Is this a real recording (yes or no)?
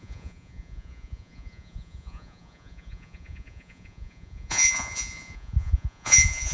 no